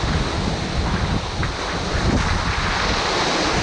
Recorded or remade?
recorded